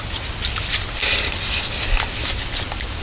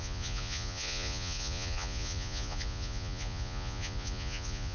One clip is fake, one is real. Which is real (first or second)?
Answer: first